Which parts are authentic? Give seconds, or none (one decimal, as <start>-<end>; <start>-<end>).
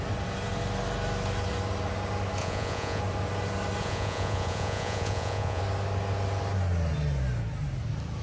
0.0-2.4; 3.0-3.8; 5.6-8.2